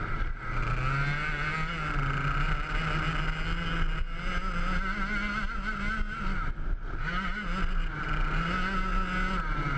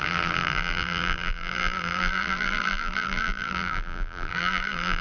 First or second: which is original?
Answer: first